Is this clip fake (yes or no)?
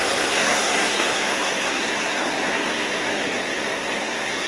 yes